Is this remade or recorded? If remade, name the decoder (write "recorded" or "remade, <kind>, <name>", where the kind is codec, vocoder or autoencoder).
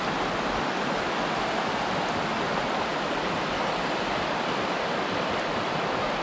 recorded